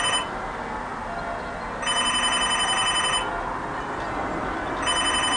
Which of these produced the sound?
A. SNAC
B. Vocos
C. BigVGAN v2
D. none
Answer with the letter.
D